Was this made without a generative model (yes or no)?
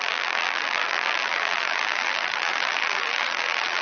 no